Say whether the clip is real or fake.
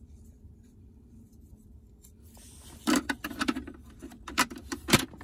fake